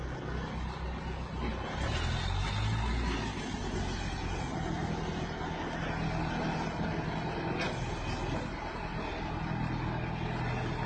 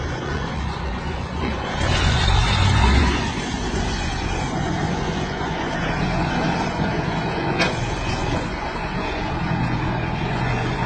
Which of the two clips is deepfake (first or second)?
second